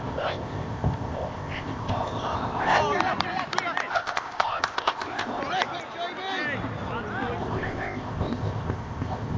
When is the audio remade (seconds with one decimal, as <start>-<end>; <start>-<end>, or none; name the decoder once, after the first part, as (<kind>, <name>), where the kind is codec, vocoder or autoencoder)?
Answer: 0.0-2.8 (codec, ZipCodec); 3.9-5.4; 7.4-9.4

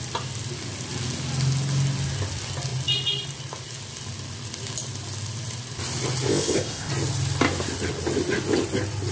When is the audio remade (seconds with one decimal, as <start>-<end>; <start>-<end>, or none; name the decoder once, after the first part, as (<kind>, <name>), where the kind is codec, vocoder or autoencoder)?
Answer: 6.3-6.9 (codec, ZipCodec)

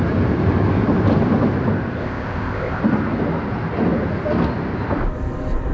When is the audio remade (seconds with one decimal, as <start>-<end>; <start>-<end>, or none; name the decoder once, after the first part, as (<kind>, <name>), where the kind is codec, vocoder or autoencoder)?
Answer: 2.0-2.8 (codec, ZipCodec)

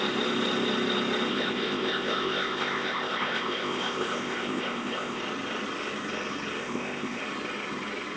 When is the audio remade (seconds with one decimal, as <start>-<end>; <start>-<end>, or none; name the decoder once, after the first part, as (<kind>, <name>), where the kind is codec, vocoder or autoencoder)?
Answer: 1.3-5.2 (codec, ZipCodec); 6.6-7.2

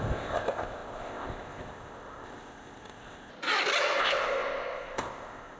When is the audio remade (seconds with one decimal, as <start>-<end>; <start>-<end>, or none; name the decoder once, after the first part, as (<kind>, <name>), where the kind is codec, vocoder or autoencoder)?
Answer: 0.0-3.3 (codec, ZipCodec); 4.0-5.6

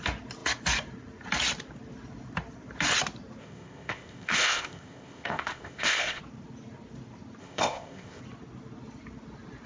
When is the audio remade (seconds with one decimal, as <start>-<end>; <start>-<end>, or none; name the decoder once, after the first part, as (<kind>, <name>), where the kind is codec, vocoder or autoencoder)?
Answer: 3.4-6.2 (codec, ZipCodec); 7.4-8.2

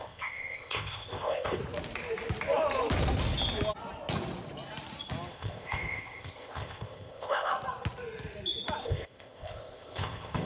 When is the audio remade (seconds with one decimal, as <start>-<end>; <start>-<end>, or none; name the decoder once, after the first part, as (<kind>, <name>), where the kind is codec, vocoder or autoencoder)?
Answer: 0.0-1.6 (codec, ZipCodec); 5.3-7.5; 8.8-10.5

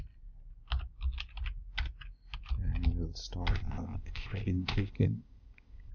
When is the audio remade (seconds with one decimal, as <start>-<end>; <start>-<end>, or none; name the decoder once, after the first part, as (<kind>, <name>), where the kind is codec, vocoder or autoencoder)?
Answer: 3.5-5.9 (codec, ZipCodec)